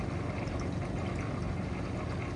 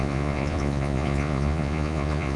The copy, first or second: second